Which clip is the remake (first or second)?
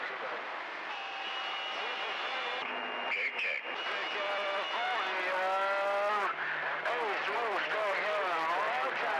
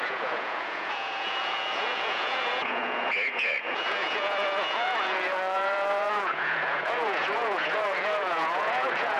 second